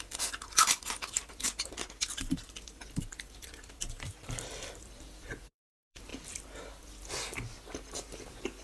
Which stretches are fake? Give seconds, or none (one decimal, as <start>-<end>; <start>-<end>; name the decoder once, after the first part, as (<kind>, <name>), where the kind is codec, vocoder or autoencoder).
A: 0.0-6.1 (vocoder, BigVGAN v2); 6.7-8.6